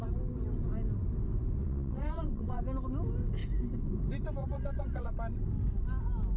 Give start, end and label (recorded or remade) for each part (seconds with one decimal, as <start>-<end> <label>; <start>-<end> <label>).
0.0-1.6 recorded; 1.6-2.6 remade; 2.6-4.4 recorded; 4.4-5.1 remade; 5.1-6.4 recorded